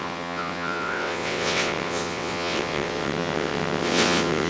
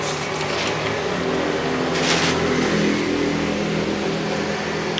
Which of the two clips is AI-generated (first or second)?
first